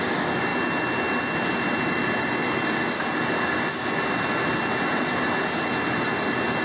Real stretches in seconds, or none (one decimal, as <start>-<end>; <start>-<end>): 0.0-6.6